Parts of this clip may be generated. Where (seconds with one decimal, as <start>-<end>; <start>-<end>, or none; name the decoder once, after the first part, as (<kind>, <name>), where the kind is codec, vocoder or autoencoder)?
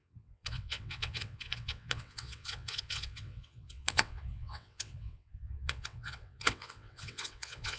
0.0-7.8 (vocoder, WaveNeXt)